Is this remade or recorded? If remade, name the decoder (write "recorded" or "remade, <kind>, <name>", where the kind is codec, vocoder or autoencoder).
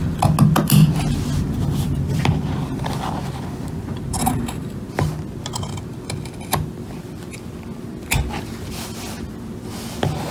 recorded